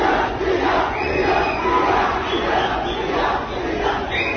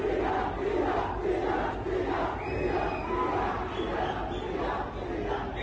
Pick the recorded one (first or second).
second